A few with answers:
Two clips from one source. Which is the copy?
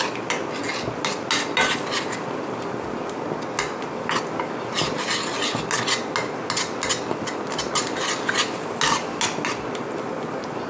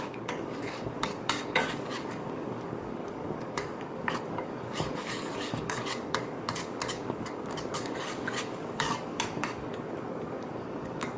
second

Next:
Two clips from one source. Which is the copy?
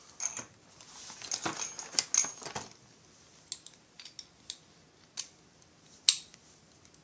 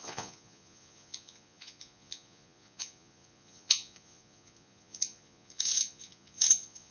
second